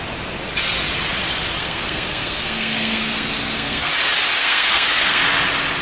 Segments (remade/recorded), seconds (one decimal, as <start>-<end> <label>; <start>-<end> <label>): 0.0-1.6 recorded; 1.6-3.9 remade; 3.9-4.4 recorded; 4.4-5.2 remade; 5.2-5.8 recorded